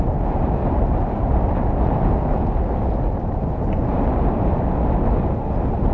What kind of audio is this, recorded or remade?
recorded